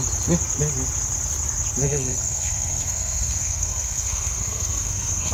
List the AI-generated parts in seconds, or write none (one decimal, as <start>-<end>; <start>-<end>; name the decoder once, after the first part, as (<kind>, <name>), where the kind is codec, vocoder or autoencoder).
1.8-5.3 (codec, SNAC)